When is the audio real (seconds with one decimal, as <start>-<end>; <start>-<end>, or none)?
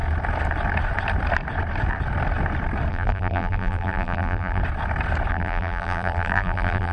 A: 0.0-2.9; 4.6-5.3